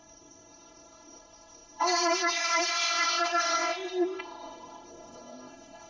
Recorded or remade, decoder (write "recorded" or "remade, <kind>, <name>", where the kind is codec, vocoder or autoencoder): remade, codec, ZipCodec